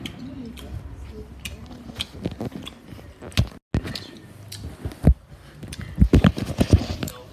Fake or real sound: real